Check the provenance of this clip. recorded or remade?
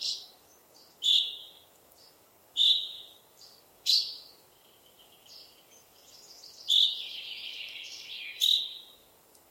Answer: remade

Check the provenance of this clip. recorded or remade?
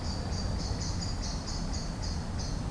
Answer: recorded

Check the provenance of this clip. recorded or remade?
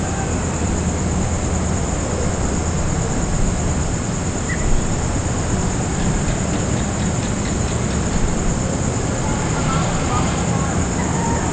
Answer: remade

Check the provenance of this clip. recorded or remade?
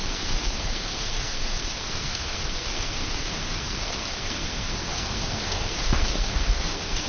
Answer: remade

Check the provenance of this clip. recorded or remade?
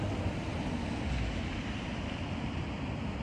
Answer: recorded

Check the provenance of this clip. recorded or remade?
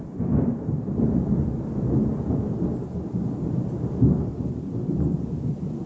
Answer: recorded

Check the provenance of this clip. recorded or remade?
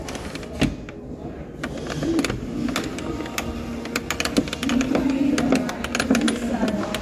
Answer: recorded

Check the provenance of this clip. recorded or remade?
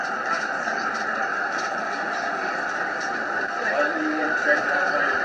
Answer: remade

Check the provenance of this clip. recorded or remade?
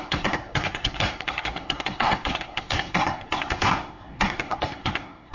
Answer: remade